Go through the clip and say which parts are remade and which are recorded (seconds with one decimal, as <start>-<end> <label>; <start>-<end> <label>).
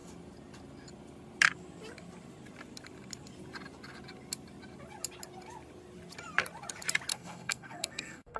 0.0-7.1 recorded; 7.1-8.4 remade